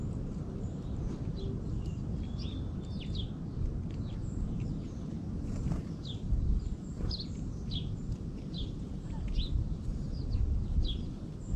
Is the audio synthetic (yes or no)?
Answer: no